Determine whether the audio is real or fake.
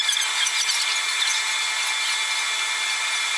real